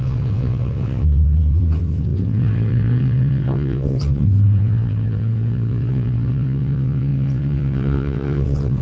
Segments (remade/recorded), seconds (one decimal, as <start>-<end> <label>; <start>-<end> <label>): 0.0-8.8 remade